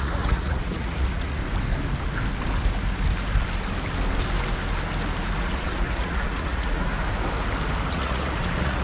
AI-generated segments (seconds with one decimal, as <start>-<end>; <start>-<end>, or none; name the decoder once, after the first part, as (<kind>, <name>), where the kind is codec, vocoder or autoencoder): 0.0-1.4 (vocoder, Vocos); 5.4-6.9; 7.9-8.8